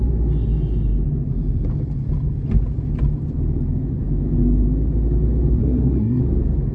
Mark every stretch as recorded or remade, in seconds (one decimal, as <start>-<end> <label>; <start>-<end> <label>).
0.0-5.6 recorded; 5.6-6.2 remade; 6.2-6.7 recorded